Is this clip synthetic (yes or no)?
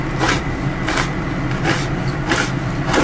no